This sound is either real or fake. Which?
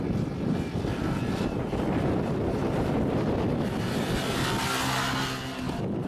real